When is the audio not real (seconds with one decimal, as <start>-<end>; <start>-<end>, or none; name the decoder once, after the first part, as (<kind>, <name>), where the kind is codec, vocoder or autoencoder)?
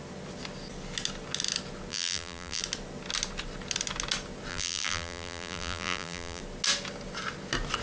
1.9-2.6 (vocoder, BigVGAN v2); 4.5-6.4